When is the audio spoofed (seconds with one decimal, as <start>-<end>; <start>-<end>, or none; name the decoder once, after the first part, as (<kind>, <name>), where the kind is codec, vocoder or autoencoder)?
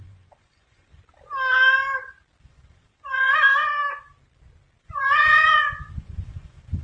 0.0-1.0 (vocoder, Vocos); 2.4-3.7; 4.8-6.8